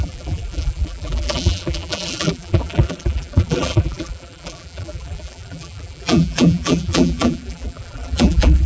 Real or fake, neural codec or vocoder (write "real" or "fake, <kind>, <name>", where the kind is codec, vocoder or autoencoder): fake, vocoder, BigVGAN v2